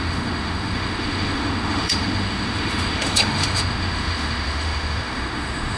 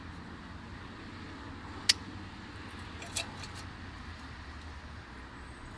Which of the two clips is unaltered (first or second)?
second